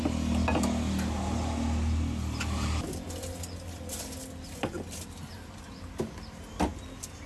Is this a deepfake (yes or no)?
no